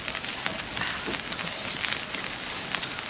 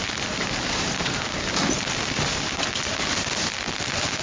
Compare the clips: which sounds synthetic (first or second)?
second